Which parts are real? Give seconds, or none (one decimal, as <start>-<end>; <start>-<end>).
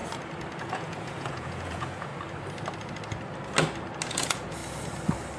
0.0-0.6; 2.1-4.1; 4.6-5.4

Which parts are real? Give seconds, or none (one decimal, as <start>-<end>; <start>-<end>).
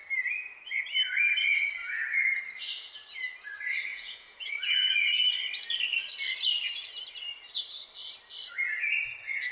0.0-1.8; 2.4-3.9; 5.3-9.5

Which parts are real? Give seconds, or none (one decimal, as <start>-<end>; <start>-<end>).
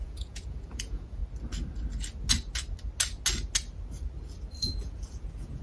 1.2-4.6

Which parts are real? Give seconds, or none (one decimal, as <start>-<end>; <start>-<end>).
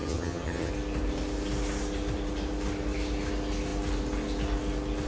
0.7-5.1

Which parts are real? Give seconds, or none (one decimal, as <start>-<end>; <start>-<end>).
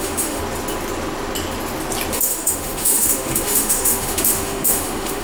0.4-2.1